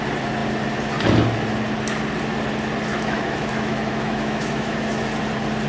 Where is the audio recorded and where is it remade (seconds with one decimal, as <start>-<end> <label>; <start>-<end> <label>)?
0.0-2.9 recorded; 2.9-5.0 remade; 5.0-5.7 recorded